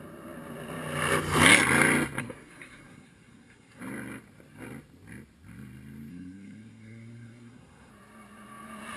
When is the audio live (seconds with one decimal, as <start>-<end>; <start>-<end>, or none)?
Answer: 0.0-2.2; 3.8-6.1; 7.9-9.0